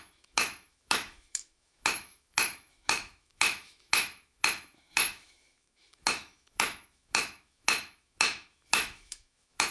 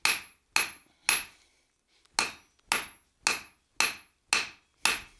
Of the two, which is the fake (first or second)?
first